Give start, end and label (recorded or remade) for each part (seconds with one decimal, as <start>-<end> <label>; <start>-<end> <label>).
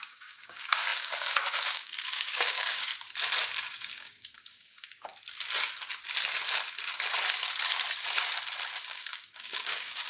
0.0-2.9 remade; 2.9-3.7 recorded; 3.7-5.1 remade; 5.1-8.8 recorded; 8.8-10.1 remade